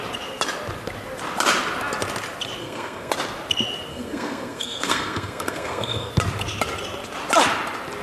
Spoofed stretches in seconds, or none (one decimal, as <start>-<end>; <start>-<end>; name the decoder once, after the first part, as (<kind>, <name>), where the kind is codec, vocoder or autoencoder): 2.6-3.1 (codec, SNAC); 3.9-6.1